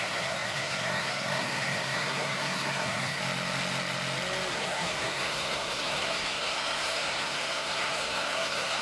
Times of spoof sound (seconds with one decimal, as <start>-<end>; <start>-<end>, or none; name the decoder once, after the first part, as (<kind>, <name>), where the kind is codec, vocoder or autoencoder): 0.0-3.2 (codec, SNAC); 4.5-8.8